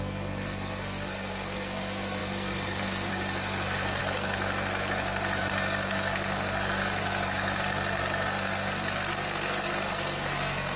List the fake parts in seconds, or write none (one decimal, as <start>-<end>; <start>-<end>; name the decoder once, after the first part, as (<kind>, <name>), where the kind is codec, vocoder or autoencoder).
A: 0.0-10.8 (codec, SNAC)